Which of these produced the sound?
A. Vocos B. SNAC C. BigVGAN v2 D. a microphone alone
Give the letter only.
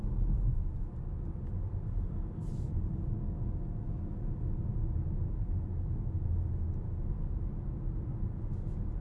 D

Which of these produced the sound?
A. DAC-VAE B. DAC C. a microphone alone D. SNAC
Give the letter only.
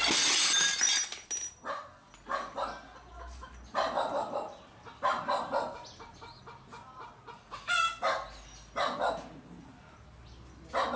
C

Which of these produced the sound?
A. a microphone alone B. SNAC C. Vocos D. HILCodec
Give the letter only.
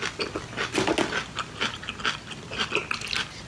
A